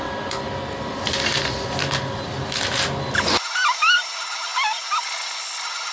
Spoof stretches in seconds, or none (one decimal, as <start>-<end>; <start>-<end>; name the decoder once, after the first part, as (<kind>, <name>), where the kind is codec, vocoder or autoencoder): none